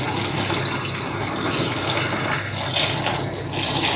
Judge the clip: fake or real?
real